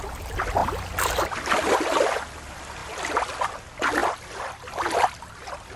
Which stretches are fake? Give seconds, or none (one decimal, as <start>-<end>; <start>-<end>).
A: none